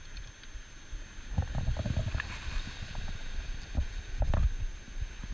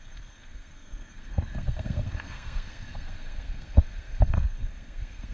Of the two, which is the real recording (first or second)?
first